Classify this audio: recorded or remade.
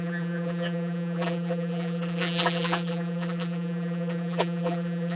remade